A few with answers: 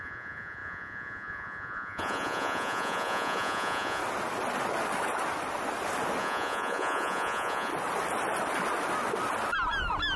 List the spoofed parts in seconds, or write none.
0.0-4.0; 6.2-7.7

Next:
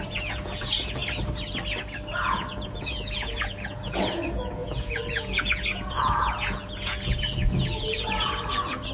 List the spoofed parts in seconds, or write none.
0.0-1.0; 2.1-8.9

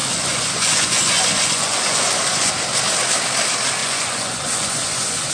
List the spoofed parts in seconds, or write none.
0.0-2.5; 3.8-5.3

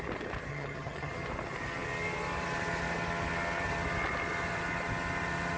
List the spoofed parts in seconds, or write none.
0.5-1.1